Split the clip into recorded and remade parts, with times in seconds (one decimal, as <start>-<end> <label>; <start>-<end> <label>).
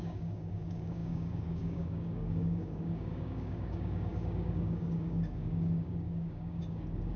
0.0-7.2 remade